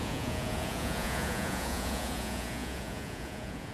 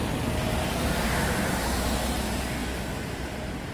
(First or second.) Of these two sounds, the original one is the second